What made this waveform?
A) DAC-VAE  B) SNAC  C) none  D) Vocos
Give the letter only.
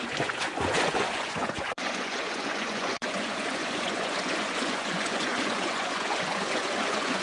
D